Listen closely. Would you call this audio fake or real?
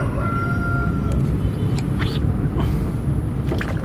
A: real